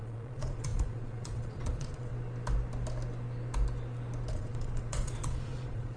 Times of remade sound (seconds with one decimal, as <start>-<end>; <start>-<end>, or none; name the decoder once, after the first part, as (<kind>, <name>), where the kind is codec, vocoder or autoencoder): 0.0-2.1 (vocoder, Vocos); 4.3-6.0